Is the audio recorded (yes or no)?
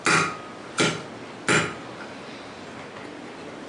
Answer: yes